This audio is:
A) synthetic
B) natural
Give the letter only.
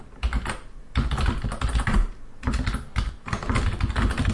B